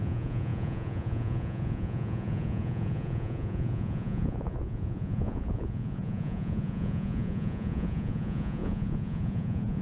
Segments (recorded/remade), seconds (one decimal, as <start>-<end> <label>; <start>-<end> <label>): 0.0-9.8 remade

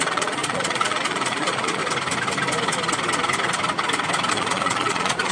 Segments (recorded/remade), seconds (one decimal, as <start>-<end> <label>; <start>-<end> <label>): 0.0-1.8 remade; 1.8-4.3 recorded; 4.3-5.3 remade

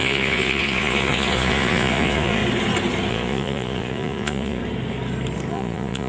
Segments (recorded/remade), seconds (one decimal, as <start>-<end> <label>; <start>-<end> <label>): 0.0-2.4 remade; 2.4-3.1 recorded; 3.1-4.6 remade; 4.6-5.5 recorded; 5.5-6.1 remade